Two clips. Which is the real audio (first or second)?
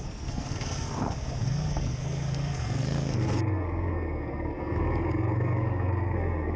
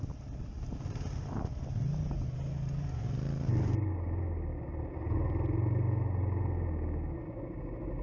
second